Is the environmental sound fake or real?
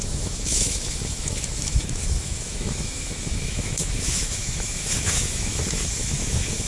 fake